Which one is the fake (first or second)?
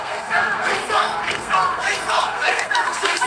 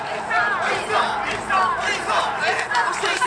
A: first